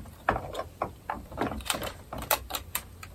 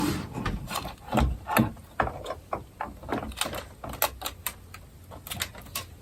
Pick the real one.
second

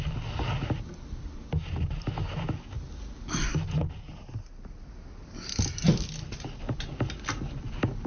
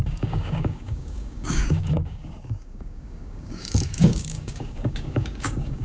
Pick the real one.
first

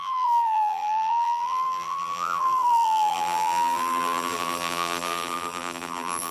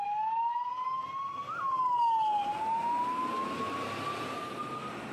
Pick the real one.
second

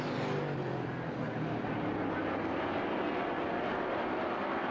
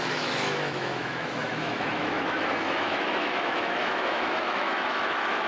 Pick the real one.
first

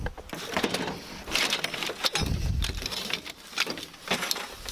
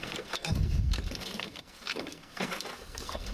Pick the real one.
first